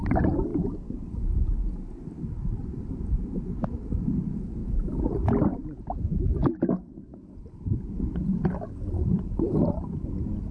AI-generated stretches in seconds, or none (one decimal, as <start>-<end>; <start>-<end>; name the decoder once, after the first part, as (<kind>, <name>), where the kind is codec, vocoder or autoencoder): none